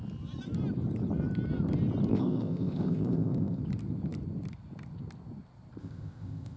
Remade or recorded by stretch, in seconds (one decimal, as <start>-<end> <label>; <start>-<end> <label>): 0.0-2.1 recorded; 2.1-3.6 remade; 3.6-5.8 recorded; 5.8-6.6 remade